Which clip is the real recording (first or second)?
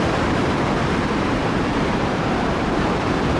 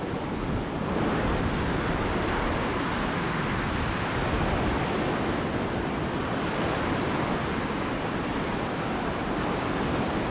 second